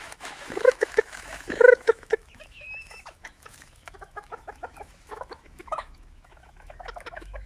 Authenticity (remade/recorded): remade